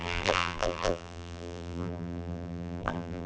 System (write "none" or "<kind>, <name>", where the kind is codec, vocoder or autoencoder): vocoder, BigVGAN v2